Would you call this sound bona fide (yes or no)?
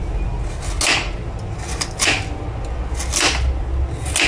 yes